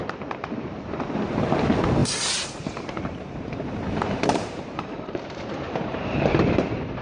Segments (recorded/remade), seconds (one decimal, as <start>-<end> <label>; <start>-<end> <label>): 0.0-0.4 recorded; 0.4-1.0 remade; 1.0-2.0 recorded; 2.0-6.2 remade; 6.2-7.0 recorded

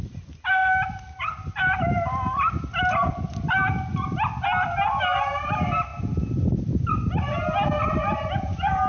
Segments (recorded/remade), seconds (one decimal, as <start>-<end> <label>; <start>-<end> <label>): 0.0-0.6 recorded; 0.6-2.5 remade; 2.5-8.9 recorded

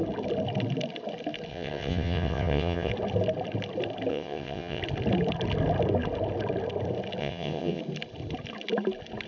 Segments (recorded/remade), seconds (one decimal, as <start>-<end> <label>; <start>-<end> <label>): 0.0-1.5 recorded; 1.5-2.9 remade; 2.9-4.1 recorded; 4.1-4.8 remade; 4.8-7.2 recorded; 7.2-7.8 remade; 7.8-9.3 recorded

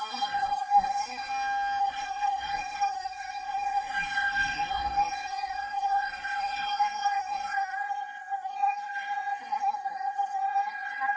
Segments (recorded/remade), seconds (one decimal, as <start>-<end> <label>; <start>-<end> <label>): 0.0-1.3 remade; 1.3-1.8 recorded; 1.8-11.2 remade

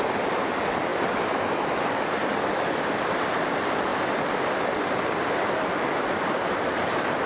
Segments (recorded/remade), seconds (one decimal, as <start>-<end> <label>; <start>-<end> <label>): 0.0-7.3 recorded

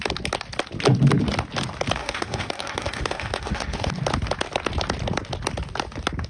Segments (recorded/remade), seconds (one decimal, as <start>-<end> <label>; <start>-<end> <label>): 0.0-2.0 recorded; 2.0-3.9 remade; 3.9-6.3 recorded

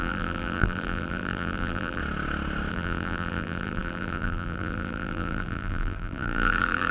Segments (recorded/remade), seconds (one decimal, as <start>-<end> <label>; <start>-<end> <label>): 0.0-2.0 remade; 2.0-2.7 recorded; 2.7-6.9 remade

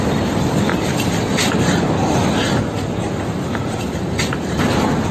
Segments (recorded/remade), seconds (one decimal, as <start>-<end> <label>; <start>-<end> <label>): 0.0-0.7 recorded; 0.7-3.8 remade; 3.8-5.1 recorded